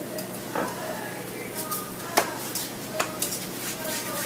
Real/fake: fake